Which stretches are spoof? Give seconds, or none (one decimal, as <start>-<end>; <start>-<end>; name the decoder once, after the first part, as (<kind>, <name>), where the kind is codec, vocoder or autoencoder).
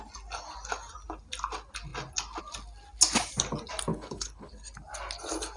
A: 3.9-4.5 (codec, HILCodec)